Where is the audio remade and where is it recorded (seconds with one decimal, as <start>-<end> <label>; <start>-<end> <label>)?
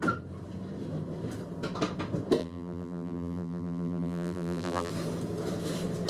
0.0-2.4 recorded; 2.4-4.9 remade; 4.9-6.1 recorded